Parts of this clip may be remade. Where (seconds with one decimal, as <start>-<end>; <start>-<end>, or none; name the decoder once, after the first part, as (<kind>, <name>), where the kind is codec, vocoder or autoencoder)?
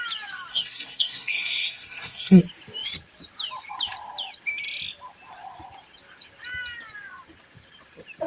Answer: 0.5-2.4 (codec, SNAC)